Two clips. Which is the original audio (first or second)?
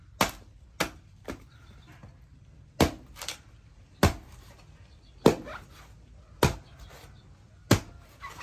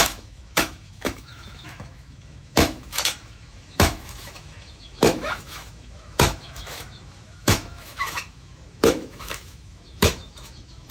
first